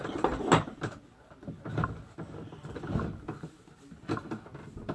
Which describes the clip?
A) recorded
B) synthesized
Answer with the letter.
A